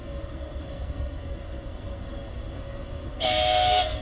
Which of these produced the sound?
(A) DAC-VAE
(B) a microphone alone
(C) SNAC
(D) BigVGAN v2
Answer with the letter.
C